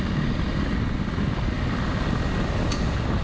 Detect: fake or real real